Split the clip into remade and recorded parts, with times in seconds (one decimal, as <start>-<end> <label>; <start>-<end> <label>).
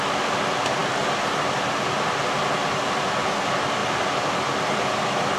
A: 0.0-5.4 recorded